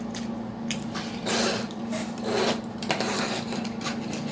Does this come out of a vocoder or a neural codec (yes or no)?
no